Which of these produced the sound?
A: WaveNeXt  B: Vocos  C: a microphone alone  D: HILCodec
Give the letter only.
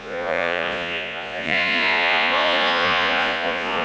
B